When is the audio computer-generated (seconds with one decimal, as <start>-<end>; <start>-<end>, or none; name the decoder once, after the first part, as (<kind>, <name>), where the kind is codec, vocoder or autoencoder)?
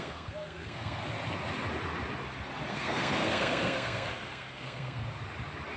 0.0-1.0 (codec, SNAC); 2.7-5.0